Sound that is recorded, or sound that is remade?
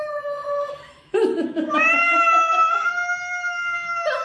remade